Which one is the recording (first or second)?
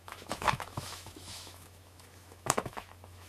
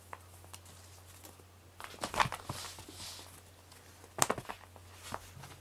second